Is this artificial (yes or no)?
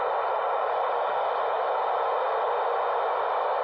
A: no